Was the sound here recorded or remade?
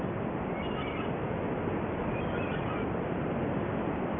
recorded